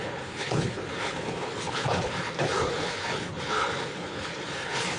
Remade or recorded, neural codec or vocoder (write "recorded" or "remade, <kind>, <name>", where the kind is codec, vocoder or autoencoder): remade, codec, HILCodec